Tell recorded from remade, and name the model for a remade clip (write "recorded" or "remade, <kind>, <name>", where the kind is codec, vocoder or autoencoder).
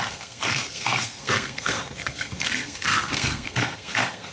remade, codec, SNAC